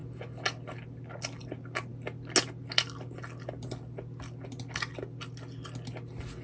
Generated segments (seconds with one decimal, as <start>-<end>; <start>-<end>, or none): none